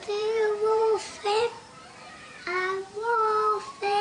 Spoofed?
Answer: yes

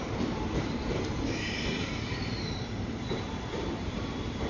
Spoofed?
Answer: yes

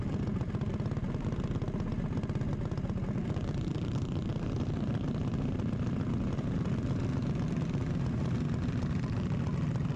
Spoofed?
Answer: no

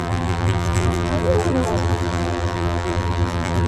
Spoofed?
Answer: yes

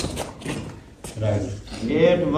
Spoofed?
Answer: no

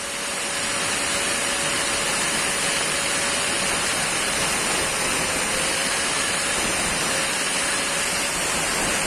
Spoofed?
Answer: no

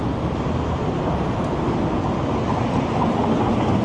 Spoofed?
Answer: no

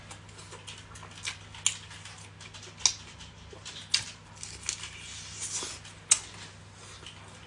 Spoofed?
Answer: no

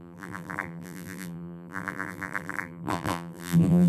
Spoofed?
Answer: yes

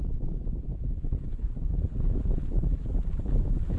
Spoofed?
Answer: yes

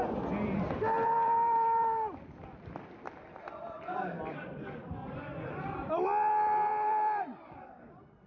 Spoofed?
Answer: yes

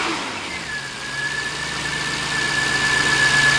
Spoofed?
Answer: no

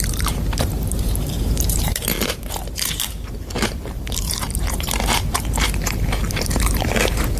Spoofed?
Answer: yes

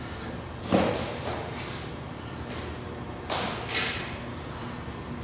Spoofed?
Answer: no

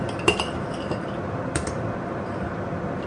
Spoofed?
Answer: yes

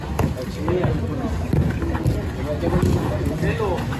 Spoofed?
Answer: no